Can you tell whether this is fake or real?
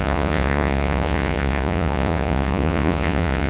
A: fake